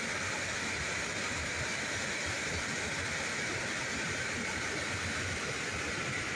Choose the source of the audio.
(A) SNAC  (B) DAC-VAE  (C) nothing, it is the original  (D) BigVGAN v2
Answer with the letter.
C